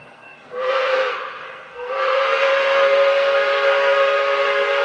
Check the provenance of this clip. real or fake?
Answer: fake